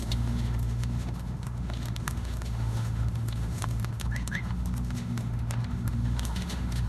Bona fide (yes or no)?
no